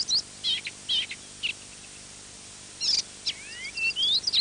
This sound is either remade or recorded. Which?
recorded